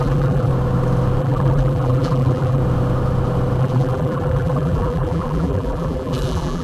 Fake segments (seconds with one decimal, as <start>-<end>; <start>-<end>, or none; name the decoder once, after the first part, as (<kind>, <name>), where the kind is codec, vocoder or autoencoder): 0.0-0.5 (vocoder, BigVGAN v2); 1.2-2.6; 3.6-6.6